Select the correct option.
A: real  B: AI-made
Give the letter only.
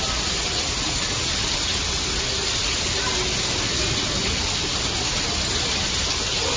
A